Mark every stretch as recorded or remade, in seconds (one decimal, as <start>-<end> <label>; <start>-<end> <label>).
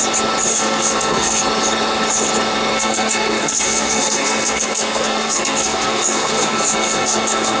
0.0-0.5 recorded; 0.5-1.4 remade; 1.4-2.7 recorded; 2.7-7.6 remade